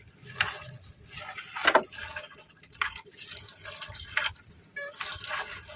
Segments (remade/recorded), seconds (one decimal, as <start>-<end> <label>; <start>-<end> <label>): 0.0-5.8 recorded